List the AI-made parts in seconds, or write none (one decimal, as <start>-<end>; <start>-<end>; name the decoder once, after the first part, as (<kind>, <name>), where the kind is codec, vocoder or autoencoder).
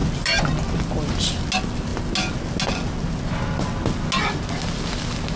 none